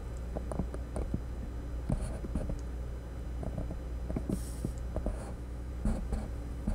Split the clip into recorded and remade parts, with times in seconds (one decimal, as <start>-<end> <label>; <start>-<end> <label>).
0.0-5.1 recorded; 5.1-5.7 remade; 5.7-6.7 recorded